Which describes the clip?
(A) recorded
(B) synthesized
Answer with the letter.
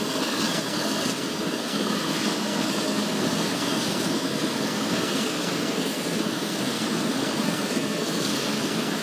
B